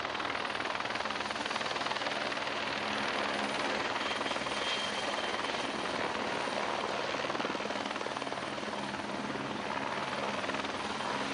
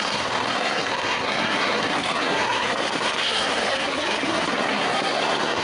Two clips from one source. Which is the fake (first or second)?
second